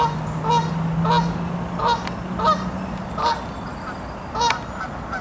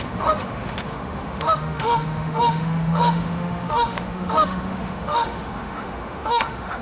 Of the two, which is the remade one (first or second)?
second